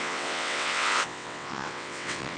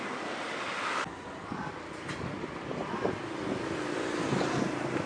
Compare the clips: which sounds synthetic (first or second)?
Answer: first